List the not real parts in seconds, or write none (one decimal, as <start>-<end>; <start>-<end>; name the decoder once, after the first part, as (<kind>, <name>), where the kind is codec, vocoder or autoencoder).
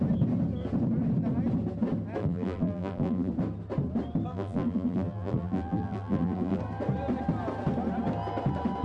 2.2-3.3 (vocoder, BigVGAN v2); 4.3-6.6